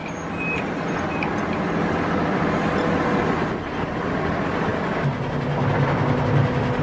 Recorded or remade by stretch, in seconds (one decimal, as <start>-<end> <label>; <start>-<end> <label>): 0.0-0.7 remade; 0.7-1.3 recorded; 1.3-2.9 remade; 2.9-6.8 recorded